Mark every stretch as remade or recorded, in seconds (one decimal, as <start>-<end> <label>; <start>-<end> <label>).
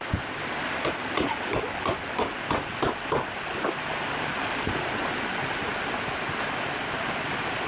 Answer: 0.0-7.7 recorded